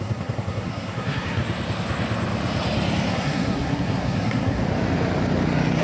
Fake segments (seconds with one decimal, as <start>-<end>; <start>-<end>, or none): 0.0-1.4; 3.1-4.6